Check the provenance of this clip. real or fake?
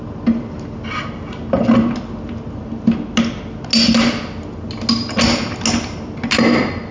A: real